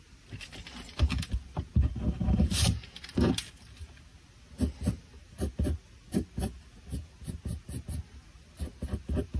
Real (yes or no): yes